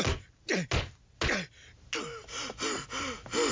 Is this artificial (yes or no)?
no